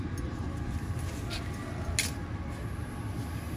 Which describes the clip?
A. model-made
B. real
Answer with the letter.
B